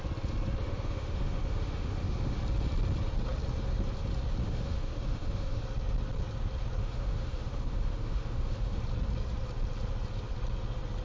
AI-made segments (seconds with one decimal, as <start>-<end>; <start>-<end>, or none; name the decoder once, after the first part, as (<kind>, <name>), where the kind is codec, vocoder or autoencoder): 0.6-2.4 (autoencoder, DAC-VAE); 4.4-5.6; 6.8-8.8